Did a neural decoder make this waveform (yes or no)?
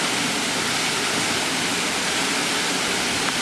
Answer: no